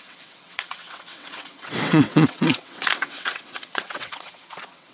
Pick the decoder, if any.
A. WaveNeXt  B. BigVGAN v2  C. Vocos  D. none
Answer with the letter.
A